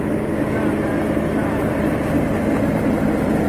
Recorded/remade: recorded